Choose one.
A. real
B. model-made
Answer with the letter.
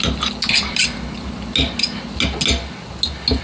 A